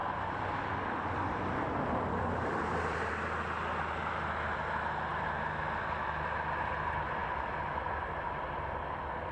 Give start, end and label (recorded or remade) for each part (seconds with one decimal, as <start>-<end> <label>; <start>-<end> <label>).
0.0-3.1 remade; 3.1-9.3 recorded

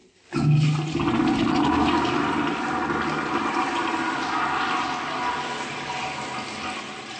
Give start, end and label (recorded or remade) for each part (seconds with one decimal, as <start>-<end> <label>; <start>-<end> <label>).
0.0-7.2 recorded

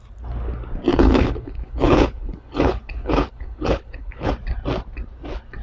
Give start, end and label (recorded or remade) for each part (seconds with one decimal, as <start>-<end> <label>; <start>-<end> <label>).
0.0-0.9 recorded; 0.9-4.3 remade; 4.3-5.6 recorded

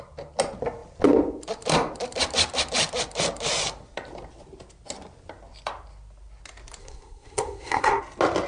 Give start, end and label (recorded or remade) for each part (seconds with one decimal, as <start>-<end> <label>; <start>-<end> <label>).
0.0-6.8 recorded; 6.8-8.0 remade; 8.0-8.5 recorded

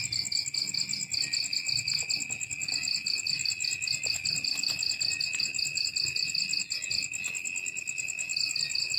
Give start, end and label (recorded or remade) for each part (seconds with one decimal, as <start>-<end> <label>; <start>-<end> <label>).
0.0-9.0 recorded

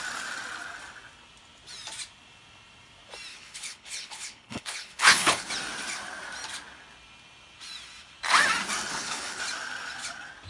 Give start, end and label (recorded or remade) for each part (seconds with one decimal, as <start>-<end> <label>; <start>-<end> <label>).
0.0-3.3 recorded; 3.3-5.5 remade; 5.5-8.9 recorded; 8.9-9.4 remade; 9.4-10.5 recorded

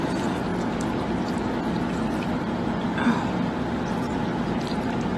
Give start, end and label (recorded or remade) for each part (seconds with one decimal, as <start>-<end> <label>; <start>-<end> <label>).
0.0-0.5 remade; 0.5-3.6 recorded; 3.6-5.2 remade